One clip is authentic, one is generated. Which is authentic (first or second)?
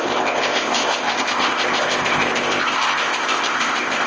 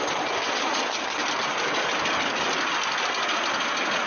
second